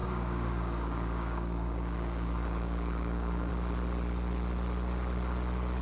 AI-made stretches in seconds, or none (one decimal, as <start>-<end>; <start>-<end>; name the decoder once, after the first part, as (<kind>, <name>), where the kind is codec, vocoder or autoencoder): 0.0-3.5 (codec, DAC)